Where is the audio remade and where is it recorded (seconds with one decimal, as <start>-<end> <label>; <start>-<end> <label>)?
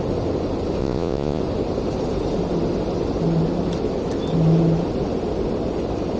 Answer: 0.0-0.8 recorded; 0.8-1.4 remade; 1.4-6.2 recorded